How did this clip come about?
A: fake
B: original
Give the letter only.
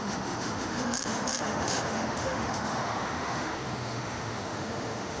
A